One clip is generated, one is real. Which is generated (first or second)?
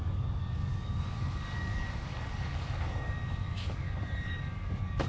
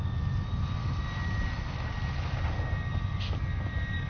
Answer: first